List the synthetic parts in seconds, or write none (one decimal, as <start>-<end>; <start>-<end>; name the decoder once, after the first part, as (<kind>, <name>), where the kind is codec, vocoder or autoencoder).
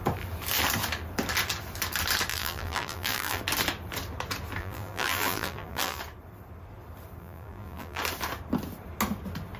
2.3-3.4 (vocoder, BigVGAN v2); 4.6-6.0; 7.2-8.0